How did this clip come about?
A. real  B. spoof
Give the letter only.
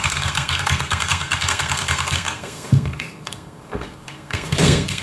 B